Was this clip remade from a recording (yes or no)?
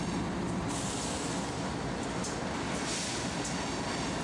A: no